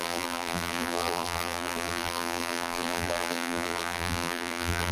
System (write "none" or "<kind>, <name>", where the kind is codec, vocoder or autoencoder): vocoder, BigVGAN v2